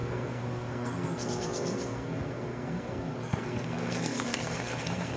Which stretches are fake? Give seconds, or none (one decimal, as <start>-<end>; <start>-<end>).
0.0-5.2